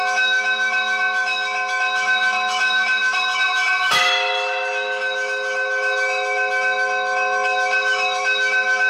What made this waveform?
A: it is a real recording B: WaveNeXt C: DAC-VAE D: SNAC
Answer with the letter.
C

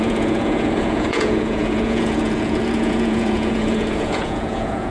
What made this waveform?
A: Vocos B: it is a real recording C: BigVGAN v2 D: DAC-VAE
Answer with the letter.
A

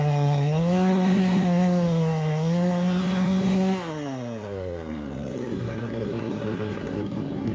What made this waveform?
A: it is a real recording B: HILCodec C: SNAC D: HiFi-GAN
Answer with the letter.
C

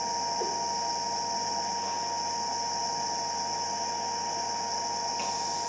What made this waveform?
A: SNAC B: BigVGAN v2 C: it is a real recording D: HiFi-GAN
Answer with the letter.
C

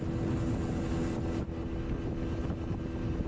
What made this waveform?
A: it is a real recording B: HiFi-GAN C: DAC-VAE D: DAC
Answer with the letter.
A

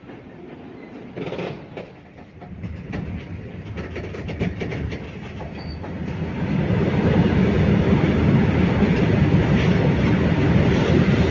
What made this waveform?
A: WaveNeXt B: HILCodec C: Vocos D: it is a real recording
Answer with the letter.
D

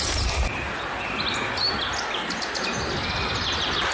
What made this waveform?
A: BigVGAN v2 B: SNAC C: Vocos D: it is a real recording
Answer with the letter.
D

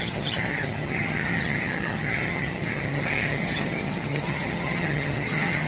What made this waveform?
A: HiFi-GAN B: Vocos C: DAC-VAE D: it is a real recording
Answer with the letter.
A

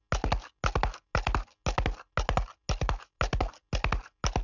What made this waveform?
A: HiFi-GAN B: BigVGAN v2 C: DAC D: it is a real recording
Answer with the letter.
D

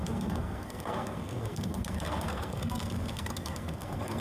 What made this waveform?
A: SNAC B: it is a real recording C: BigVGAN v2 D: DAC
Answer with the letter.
A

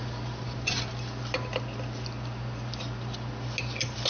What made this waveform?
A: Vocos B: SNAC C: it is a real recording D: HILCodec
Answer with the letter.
C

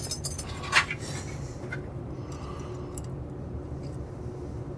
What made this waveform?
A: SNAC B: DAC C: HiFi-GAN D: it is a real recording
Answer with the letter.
D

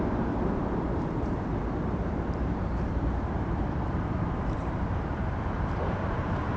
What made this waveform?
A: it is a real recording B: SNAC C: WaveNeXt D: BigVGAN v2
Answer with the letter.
D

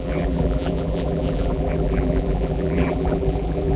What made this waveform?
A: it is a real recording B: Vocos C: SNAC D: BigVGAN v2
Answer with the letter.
D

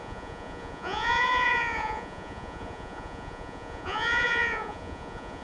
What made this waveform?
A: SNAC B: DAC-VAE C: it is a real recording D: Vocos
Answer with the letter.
D